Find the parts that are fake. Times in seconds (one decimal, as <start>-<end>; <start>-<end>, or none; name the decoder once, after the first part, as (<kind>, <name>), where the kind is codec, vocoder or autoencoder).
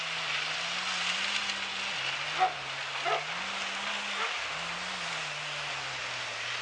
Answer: none